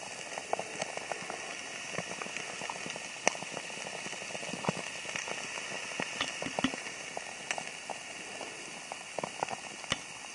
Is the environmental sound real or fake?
real